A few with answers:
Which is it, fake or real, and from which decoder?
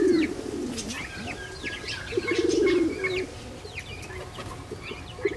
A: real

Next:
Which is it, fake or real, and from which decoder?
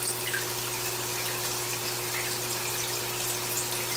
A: real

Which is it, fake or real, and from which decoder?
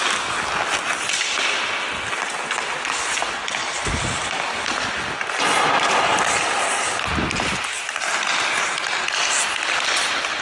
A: real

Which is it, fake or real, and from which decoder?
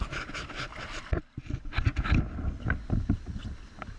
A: fake, vocoder, BigVGAN v2